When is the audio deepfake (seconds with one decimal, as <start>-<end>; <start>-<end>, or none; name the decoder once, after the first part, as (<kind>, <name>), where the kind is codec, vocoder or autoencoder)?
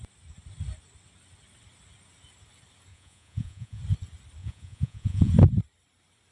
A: 2.9-3.8 (vocoder, Vocos); 4.4-5.3